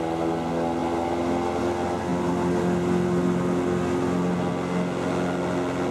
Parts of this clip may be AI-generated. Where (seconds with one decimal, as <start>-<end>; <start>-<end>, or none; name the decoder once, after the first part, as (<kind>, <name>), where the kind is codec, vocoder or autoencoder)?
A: none